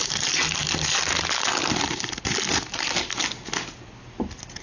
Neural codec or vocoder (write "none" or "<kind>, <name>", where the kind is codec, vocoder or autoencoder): none